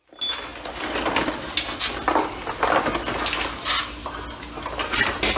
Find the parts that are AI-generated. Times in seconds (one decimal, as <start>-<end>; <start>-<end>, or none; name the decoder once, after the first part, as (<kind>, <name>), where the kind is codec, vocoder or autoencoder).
none